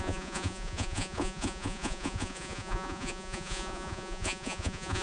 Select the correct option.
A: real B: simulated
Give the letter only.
B